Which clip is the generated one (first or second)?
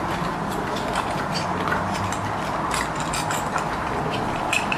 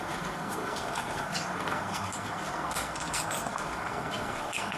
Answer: second